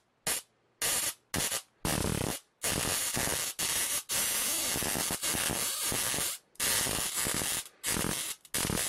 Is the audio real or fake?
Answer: real